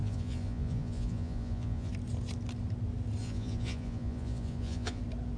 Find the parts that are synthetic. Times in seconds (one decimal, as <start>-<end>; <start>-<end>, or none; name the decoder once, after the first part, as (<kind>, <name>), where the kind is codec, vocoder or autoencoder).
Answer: 0.0-1.9 (vocoder, Vocos); 3.2-5.0